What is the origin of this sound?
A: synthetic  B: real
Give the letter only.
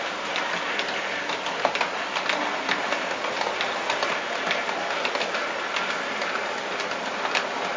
B